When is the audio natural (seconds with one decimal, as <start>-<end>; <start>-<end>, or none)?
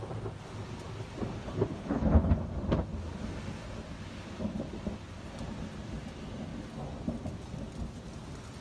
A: 0.0-1.4; 2.3-8.6